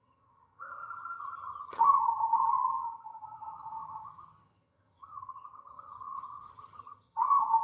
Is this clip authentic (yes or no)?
no